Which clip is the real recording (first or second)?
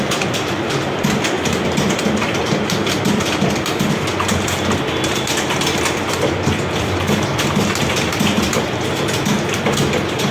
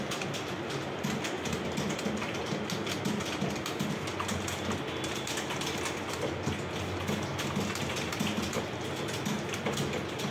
second